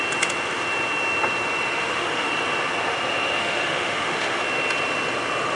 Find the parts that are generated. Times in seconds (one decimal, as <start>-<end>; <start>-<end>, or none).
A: 1.8-2.3; 3.4-4.4